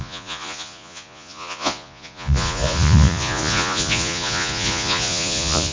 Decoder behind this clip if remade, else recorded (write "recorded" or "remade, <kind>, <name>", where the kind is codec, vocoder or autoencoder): remade, vocoder, Vocos